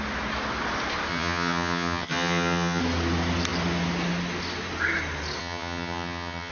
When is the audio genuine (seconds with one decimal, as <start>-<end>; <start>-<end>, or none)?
0.0-1.1; 2.8-5.4